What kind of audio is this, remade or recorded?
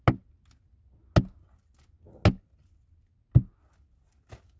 recorded